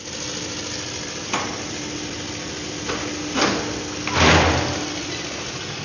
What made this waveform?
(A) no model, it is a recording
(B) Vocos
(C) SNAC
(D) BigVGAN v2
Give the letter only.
A